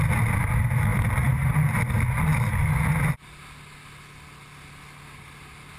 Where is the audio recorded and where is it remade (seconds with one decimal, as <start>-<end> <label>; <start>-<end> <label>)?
0.0-5.8 recorded